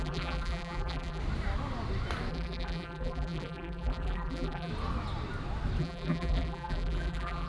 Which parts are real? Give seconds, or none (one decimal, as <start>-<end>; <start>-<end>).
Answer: 1.2-2.3; 4.7-5.8